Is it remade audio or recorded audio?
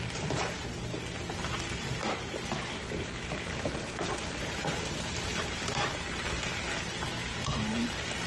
recorded